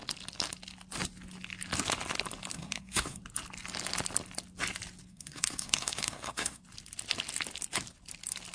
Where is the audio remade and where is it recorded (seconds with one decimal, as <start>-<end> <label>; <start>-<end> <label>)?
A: 0.0-2.5 recorded; 2.5-3.2 remade; 3.2-5.1 recorded; 5.1-6.6 remade; 6.6-8.5 recorded